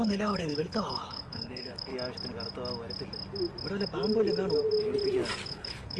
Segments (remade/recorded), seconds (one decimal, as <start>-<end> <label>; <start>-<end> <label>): 0.0-1.9 remade; 1.9-5.5 recorded; 5.5-6.0 remade